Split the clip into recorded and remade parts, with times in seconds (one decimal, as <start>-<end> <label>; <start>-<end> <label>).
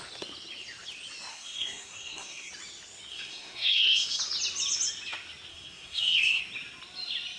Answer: 0.0-1.3 recorded; 1.3-2.5 remade; 2.5-3.1 recorded; 3.1-4.2 remade; 4.2-5.5 recorded; 5.5-6.4 remade; 6.4-7.4 recorded